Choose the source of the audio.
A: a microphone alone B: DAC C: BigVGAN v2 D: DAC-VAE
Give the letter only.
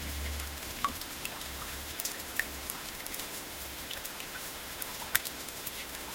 D